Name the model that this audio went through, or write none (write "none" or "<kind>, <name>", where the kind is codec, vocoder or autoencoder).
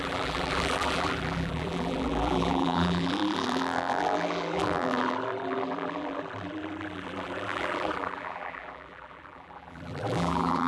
vocoder, BigVGAN v2